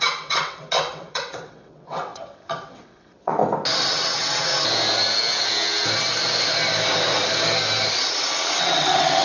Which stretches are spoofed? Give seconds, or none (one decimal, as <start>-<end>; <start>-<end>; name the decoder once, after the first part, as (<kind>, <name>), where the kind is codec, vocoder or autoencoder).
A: 0.0-3.4 (vocoder, WaveNeXt); 3.9-4.5; 7.9-9.2